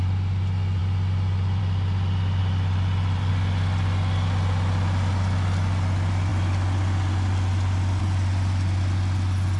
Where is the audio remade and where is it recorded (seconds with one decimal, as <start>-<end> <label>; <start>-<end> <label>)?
0.0-2.4 recorded; 2.4-3.3 remade; 3.3-9.6 recorded